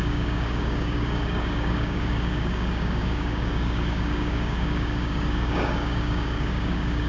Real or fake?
fake